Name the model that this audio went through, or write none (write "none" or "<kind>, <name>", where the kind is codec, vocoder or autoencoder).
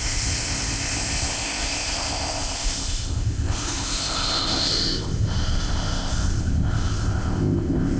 codec, ZipCodec